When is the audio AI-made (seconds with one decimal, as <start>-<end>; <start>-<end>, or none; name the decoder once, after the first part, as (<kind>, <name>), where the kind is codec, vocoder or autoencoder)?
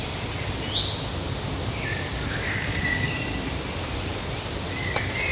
2.1-3.1 (codec, DAC)